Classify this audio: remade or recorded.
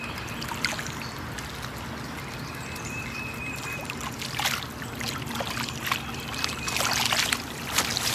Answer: recorded